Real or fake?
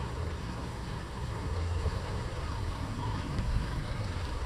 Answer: fake